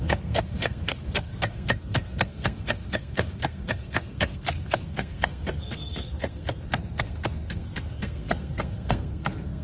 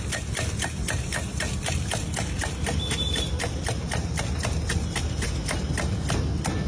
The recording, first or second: second